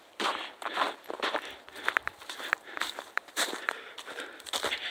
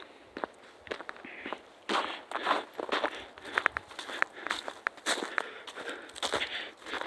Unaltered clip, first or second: second